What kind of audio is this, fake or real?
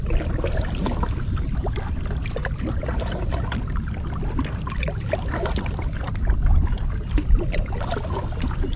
real